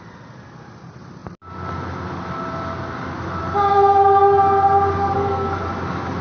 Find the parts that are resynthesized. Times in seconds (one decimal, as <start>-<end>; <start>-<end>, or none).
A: 5.0-5.6